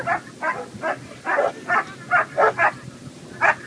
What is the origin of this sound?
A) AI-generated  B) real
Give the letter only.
B